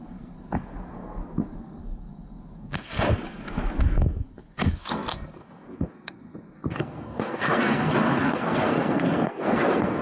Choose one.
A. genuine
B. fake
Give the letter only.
B